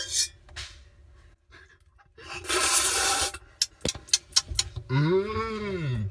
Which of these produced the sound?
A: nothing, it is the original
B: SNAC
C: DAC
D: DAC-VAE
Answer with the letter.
A